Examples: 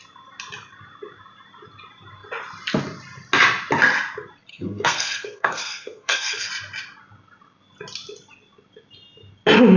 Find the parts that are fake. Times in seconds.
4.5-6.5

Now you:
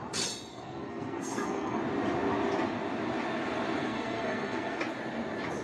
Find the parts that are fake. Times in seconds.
0.5-1.8; 3.8-4.8